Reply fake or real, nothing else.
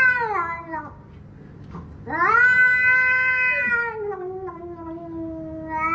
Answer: real